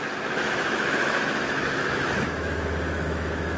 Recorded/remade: remade